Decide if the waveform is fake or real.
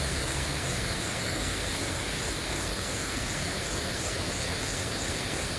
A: fake